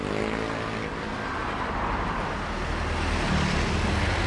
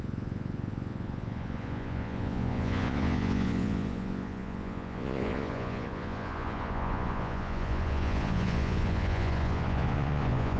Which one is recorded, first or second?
first